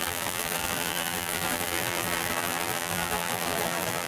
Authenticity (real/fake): fake